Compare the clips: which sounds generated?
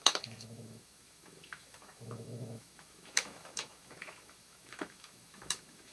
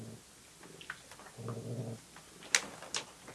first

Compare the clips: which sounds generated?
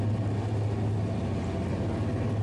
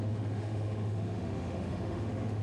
second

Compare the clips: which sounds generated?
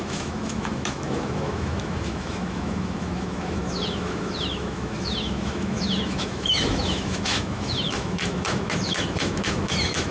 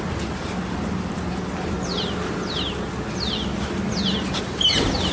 first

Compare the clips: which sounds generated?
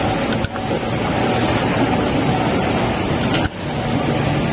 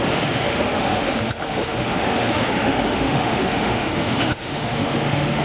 second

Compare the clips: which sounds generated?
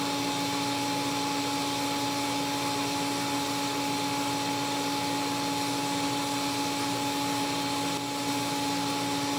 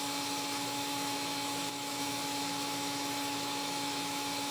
second